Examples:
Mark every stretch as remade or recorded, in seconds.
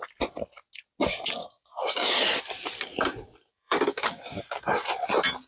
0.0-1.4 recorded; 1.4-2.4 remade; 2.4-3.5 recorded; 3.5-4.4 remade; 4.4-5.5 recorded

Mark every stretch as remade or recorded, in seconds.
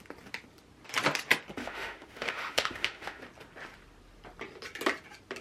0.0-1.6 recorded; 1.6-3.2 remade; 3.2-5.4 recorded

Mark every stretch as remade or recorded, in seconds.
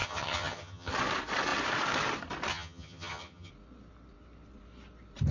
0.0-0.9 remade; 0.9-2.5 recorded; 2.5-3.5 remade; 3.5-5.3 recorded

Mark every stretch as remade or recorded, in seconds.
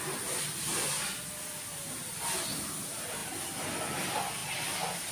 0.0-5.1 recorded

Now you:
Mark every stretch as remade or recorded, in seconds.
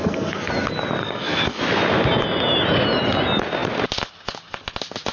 0.0-0.5 remade; 0.5-1.0 recorded; 1.0-1.6 remade; 1.6-5.1 recorded